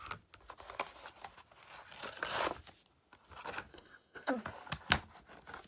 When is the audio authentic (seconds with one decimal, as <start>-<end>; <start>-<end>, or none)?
0.0-3.7; 4.3-5.7